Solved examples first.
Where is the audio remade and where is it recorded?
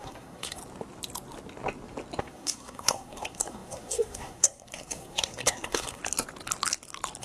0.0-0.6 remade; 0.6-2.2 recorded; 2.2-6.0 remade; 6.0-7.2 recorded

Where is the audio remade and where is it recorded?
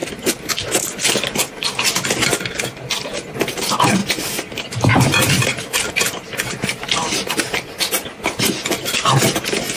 0.0-4.0 remade; 4.0-5.9 recorded; 5.9-9.8 remade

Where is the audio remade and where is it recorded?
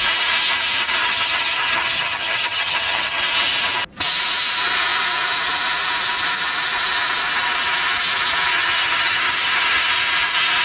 0.0-1.0 recorded; 1.0-3.2 remade; 3.2-8.5 recorded; 8.5-9.9 remade; 9.9-10.6 recorded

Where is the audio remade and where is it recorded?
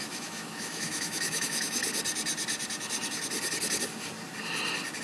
0.0-1.8 remade; 1.8-5.0 recorded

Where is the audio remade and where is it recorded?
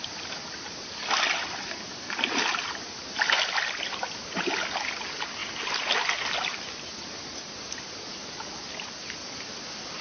0.0-10.0 recorded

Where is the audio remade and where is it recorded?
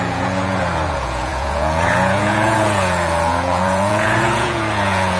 0.0-5.2 remade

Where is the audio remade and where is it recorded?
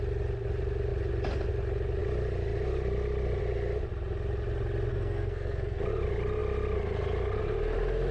0.0-4.9 recorded; 4.9-5.8 remade; 5.8-8.1 recorded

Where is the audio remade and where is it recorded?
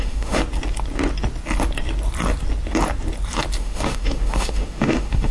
0.0-0.4 remade; 0.4-3.6 recorded; 3.6-5.3 remade